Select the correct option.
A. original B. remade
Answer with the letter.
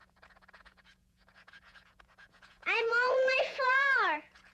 B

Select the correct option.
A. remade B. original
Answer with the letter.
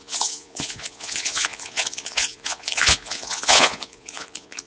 A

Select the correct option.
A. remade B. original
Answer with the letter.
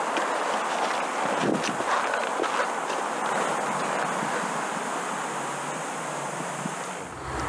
B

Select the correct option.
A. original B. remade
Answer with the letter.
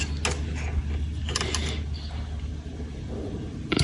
A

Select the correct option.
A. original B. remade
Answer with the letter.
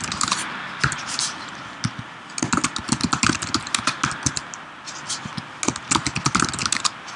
A